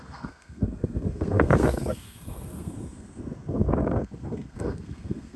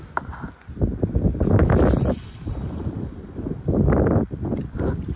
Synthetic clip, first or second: first